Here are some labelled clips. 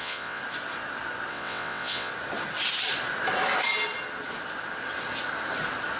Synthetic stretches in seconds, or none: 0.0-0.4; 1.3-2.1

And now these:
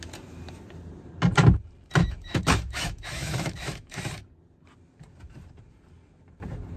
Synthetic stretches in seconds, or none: 2.0-4.0

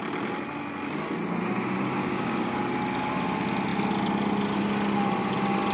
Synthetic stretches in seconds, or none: 2.0-2.6

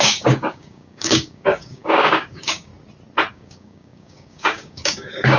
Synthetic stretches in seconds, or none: 0.0-2.7; 3.3-5.4

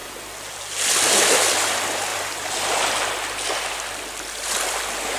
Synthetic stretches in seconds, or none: none

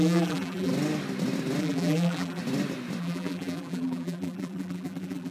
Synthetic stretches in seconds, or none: 0.0-0.7; 1.6-2.4; 3.0-5.3

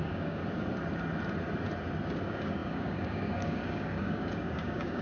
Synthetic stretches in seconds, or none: 0.0-0.4; 2.2-5.0

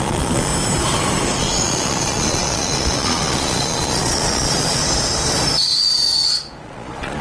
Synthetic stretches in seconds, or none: 0.0-0.5; 1.4-4.8; 6.6-7.2